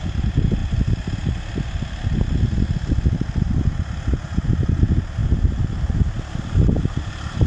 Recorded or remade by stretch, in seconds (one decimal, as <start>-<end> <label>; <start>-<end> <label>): 0.0-7.5 recorded